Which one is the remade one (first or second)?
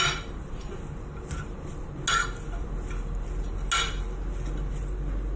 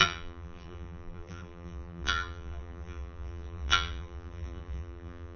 second